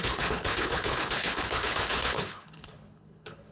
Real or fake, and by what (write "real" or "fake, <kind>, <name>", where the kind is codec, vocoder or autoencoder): fake, codec, HILCodec